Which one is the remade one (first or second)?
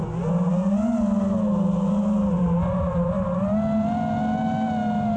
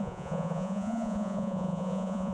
second